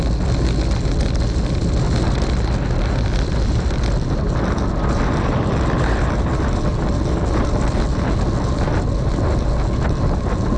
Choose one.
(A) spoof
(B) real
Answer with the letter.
B